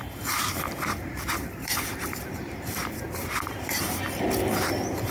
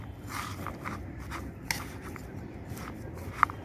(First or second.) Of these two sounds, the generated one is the first